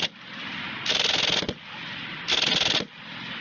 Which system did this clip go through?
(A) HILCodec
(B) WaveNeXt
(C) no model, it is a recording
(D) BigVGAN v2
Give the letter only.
C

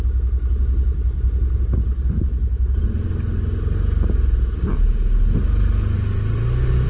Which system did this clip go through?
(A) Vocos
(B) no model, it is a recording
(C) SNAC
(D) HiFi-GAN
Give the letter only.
B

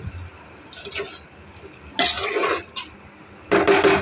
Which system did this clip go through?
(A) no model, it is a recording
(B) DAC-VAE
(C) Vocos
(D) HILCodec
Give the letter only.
A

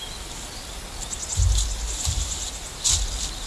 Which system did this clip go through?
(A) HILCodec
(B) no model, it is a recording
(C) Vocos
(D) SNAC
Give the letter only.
B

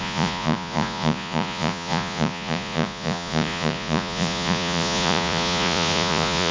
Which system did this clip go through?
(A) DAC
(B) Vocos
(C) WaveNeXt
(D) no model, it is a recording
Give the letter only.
B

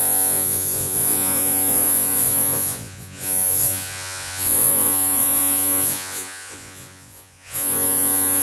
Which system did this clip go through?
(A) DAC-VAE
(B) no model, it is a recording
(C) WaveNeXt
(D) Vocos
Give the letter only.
D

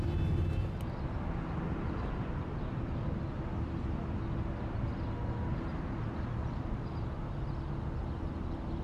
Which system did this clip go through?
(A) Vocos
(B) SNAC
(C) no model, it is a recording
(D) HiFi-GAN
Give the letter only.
C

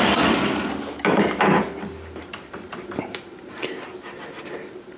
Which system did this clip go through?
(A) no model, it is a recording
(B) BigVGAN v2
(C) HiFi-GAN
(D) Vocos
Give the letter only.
A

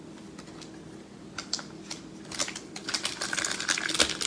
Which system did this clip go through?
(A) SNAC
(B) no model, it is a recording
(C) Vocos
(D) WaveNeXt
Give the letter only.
B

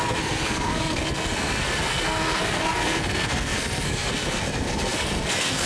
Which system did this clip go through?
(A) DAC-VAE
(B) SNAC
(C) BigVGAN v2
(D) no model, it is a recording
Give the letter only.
B